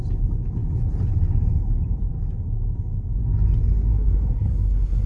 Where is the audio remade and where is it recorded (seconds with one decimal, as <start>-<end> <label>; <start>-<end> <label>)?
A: 0.0-3.9 recorded; 3.9-5.1 remade